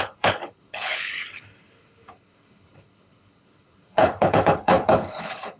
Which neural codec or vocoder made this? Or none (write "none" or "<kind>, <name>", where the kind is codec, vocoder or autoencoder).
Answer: codec, HILCodec